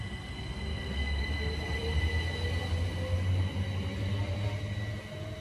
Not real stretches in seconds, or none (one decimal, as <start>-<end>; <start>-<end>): 0.7-1.2